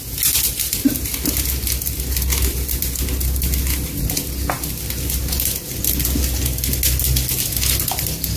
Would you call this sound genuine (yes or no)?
yes